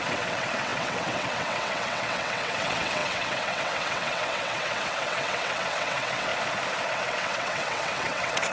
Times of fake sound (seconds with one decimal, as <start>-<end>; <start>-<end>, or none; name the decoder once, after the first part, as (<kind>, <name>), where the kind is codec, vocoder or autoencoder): 0.0-6.3 (vocoder, WaveNeXt); 6.9-8.5